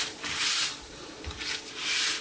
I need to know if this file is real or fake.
fake